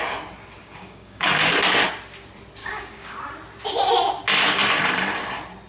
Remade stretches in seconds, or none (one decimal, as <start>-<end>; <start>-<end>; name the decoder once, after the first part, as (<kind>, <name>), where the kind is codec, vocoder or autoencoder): 0.6-1.5 (codec, DAC); 2.6-3.2